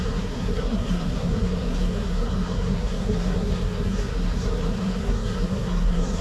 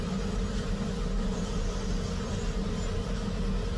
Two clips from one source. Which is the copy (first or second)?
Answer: first